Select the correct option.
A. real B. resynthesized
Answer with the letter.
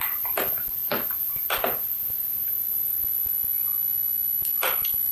A